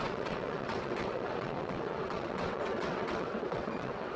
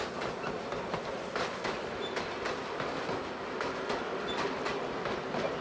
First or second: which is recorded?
second